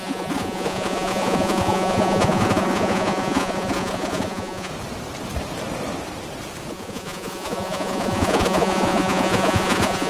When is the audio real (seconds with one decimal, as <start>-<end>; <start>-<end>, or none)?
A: 4.7-6.7